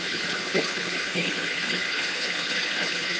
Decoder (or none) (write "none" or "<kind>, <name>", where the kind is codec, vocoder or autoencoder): codec, HILCodec